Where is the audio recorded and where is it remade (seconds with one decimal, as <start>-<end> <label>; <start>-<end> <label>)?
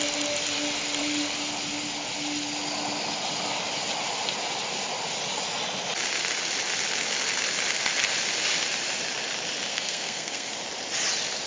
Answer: 0.0-9.7 recorded; 9.7-10.5 remade; 10.5-11.5 recorded